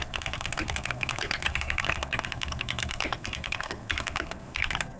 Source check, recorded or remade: remade